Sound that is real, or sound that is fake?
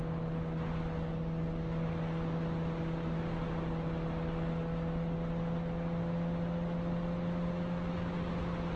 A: real